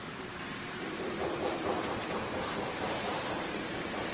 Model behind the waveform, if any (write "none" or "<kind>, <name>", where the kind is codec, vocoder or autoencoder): vocoder, BigVGAN v2